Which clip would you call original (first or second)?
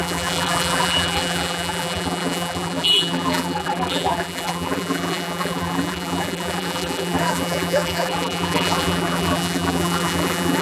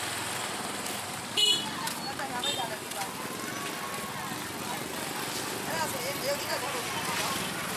second